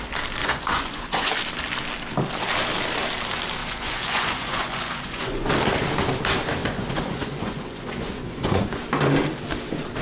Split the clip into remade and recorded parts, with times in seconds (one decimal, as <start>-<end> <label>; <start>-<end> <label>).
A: 0.0-0.4 recorded; 0.4-1.3 remade; 1.3-3.6 recorded; 3.6-5.5 remade; 5.5-6.6 recorded; 6.6-8.8 remade; 8.8-10.0 recorded